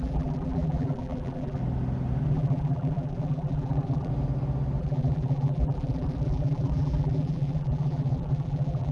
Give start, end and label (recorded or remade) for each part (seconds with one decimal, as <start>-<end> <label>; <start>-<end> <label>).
0.0-1.6 remade; 1.6-2.3 recorded; 2.3-4.1 remade; 4.1-4.8 recorded; 4.8-8.9 remade